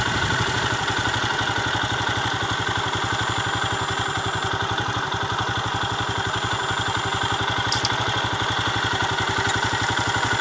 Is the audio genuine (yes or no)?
yes